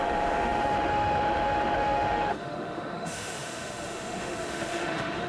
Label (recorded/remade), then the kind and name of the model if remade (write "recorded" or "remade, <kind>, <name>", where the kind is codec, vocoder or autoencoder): remade, autoencoder, DAC-VAE